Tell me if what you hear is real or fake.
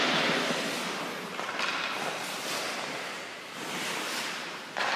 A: real